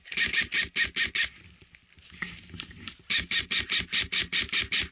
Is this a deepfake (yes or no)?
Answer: no